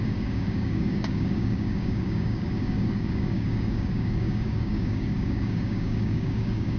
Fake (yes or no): yes